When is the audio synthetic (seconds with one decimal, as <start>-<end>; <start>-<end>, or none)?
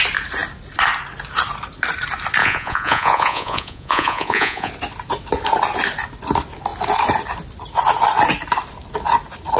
2.4-4.7